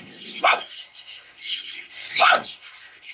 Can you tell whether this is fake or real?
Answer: fake